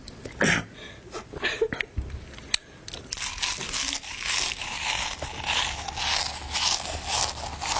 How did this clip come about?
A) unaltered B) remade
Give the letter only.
A